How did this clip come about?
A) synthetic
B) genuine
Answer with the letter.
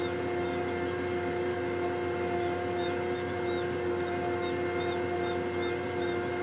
B